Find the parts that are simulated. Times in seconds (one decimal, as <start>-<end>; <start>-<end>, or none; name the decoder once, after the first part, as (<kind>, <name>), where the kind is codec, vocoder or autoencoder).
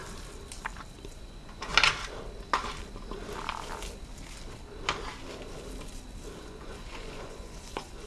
1.1-1.7 (vocoder, Vocos); 6.4-8.1